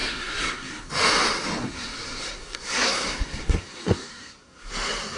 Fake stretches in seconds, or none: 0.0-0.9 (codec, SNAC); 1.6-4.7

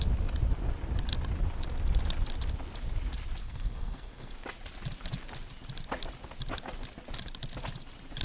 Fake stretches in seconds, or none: 3.4-4.3 (codec, SNAC)